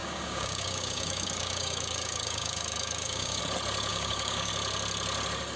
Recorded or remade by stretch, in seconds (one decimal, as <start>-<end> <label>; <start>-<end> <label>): 0.0-3.4 remade; 3.4-3.9 recorded; 3.9-4.5 remade; 4.5-5.6 recorded